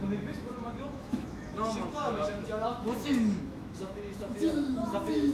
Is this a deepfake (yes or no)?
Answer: yes